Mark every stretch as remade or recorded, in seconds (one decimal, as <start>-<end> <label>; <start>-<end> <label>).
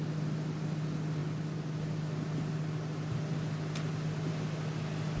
0.0-5.2 recorded